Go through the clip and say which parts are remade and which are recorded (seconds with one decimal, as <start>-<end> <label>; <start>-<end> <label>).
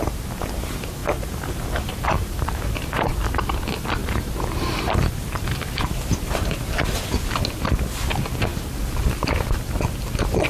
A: 0.0-1.0 recorded; 1.0-3.4 remade; 3.4-4.0 recorded; 4.0-7.1 remade; 7.1-10.5 recorded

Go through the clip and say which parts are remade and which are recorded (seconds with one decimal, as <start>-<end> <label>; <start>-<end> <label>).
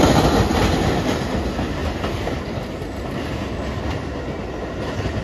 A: 0.0-5.2 recorded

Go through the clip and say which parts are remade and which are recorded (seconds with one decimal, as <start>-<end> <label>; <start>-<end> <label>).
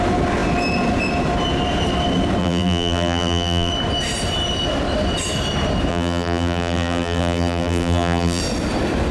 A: 0.0-2.4 recorded; 2.4-3.7 remade; 3.7-5.9 recorded; 5.9-8.4 remade; 8.4-9.1 recorded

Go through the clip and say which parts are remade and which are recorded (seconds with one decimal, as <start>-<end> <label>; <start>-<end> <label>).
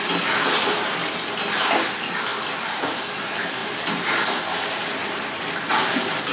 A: 0.0-1.0 remade; 1.0-1.6 recorded; 1.6-5.0 remade; 5.0-5.7 recorded; 5.7-6.3 remade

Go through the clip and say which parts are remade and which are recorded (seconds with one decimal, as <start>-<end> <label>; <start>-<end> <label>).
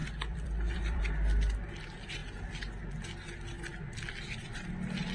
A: 0.0-1.0 remade; 1.0-5.1 recorded